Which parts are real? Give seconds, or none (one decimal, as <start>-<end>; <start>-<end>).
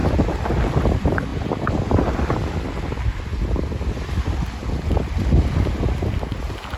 0.0-4.6; 5.7-6.8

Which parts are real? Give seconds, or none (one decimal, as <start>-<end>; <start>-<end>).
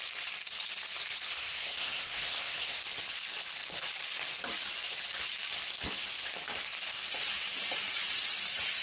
0.0-1.3; 2.8-8.8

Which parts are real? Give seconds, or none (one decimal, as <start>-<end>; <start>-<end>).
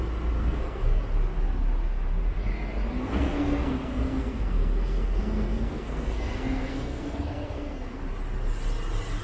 0.0-0.4; 1.0-3.0; 8.0-9.2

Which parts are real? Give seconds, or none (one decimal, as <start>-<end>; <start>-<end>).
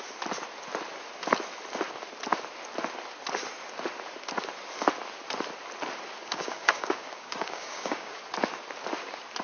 0.0-6.2; 8.2-9.4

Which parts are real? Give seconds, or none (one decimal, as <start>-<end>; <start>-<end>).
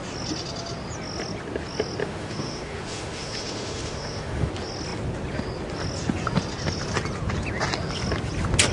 0.0-2.0; 4.5-8.7